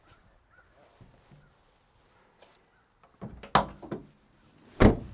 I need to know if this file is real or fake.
real